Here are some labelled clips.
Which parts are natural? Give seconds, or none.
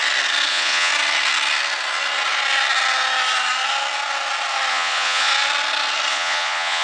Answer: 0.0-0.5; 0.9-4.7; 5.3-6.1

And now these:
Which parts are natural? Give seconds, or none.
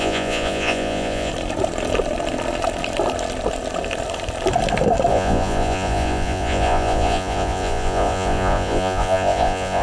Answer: 1.3-5.1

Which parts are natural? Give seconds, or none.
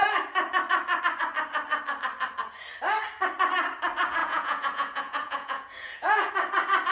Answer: 0.0-4.2; 6.3-6.9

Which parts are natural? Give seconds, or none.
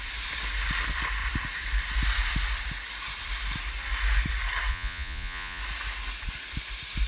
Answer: 0.0-4.7; 5.6-7.1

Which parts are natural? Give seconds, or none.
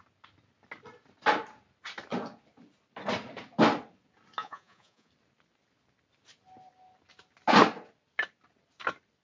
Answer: 0.0-4.4; 5.1-9.2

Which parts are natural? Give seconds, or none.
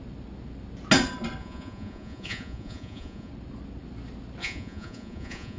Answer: 0.0-1.4; 3.3-4.4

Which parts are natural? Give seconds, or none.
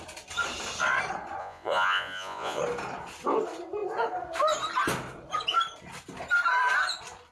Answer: 0.0-1.4; 2.6-7.3